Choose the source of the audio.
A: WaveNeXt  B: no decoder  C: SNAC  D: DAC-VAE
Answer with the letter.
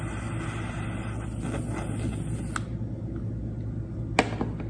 B